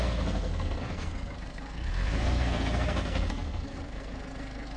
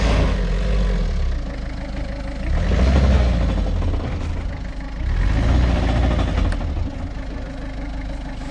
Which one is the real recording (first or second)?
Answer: second